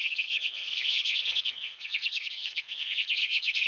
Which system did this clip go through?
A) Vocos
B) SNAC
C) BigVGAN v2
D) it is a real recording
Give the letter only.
B